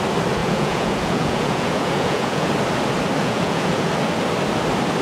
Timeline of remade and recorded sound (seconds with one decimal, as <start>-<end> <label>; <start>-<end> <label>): 0.0-0.4 recorded; 0.4-2.5 remade; 2.5-3.2 recorded; 3.2-3.9 remade; 3.9-5.0 recorded